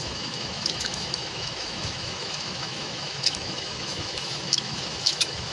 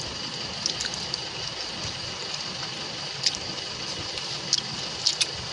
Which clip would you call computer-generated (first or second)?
first